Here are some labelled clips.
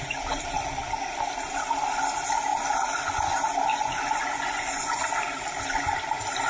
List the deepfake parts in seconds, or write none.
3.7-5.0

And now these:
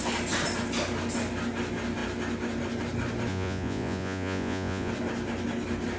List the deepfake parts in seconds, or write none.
3.3-4.9

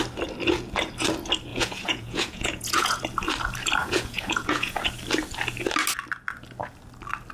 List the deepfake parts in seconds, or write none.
1.5-3.0; 3.8-4.8

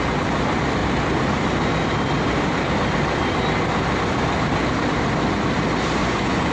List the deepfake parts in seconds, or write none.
6.0-6.5